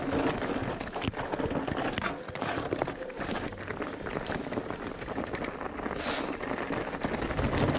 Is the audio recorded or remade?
recorded